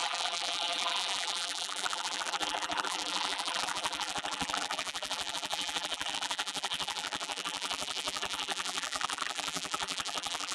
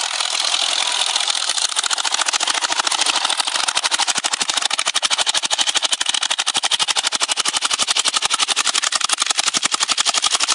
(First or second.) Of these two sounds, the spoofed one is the first